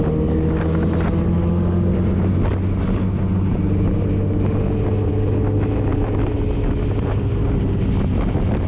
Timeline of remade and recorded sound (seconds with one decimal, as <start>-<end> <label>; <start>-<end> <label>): 0.0-8.7 recorded